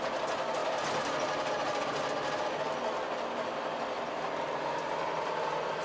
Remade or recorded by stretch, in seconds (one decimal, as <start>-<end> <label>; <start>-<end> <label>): 0.0-0.6 recorded; 0.6-1.3 remade; 1.3-5.8 recorded